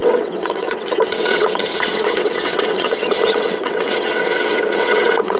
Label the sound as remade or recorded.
remade